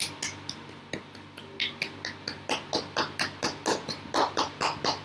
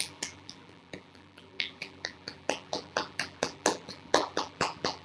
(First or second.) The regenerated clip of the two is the second